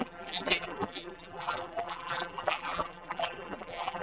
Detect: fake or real fake